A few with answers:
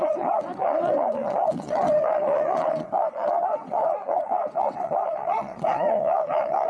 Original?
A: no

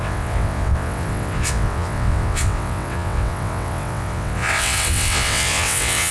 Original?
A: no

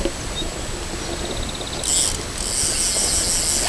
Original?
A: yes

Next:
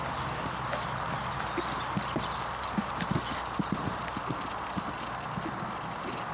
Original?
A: yes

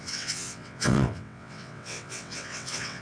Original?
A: no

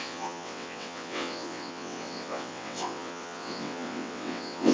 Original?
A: no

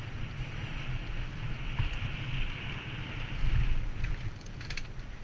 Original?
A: yes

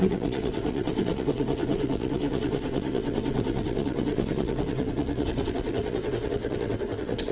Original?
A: no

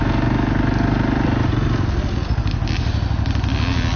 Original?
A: yes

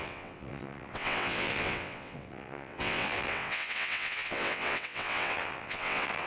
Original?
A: no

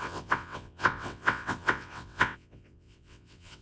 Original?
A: no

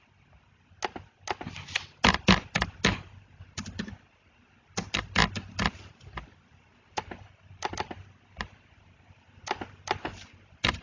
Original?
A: yes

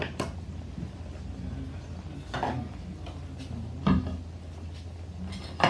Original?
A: yes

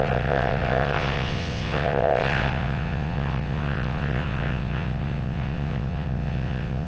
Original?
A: no